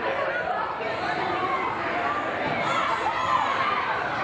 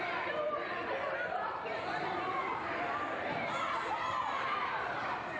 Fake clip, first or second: second